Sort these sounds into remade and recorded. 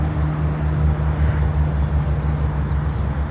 recorded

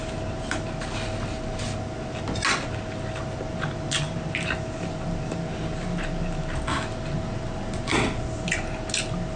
recorded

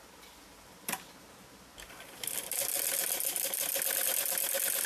recorded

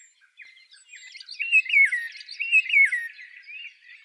recorded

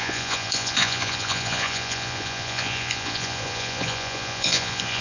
remade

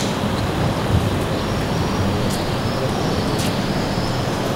recorded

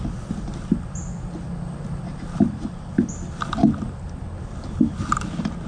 recorded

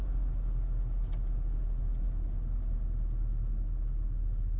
recorded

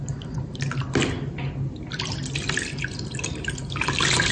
recorded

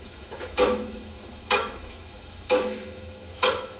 remade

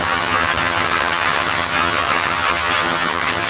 remade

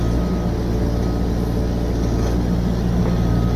recorded